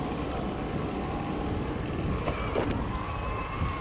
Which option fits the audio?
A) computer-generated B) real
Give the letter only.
B